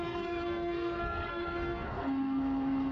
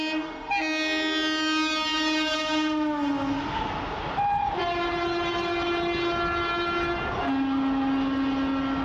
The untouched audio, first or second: second